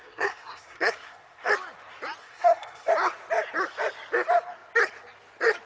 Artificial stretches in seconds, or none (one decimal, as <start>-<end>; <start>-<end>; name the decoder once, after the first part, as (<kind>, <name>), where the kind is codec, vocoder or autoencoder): 0.0-1.5 (codec, SNAC); 2.2-2.9